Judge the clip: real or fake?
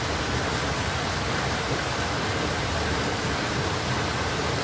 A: real